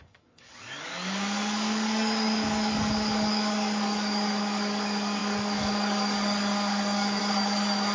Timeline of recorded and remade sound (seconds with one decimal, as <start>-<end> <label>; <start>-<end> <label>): 0.0-7.9 remade